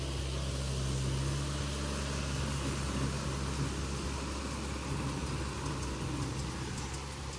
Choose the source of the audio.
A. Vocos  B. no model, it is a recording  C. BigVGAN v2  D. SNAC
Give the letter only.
B